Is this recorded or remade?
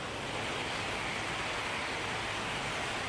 recorded